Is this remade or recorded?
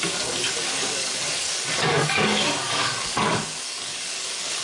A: remade